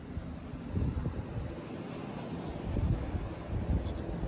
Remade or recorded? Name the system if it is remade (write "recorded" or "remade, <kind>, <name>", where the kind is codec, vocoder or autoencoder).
recorded